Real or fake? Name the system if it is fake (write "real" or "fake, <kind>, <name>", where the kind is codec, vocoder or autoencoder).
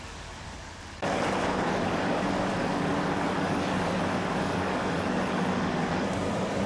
fake, codec, DAC